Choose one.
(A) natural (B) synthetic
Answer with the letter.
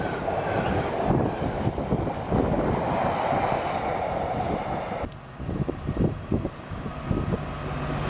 A